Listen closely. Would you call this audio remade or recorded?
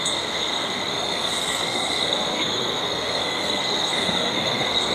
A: remade